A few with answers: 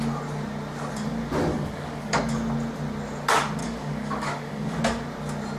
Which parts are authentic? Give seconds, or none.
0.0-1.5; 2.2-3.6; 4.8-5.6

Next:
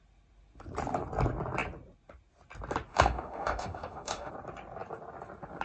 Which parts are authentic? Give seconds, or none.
0.0-2.9; 4.3-5.6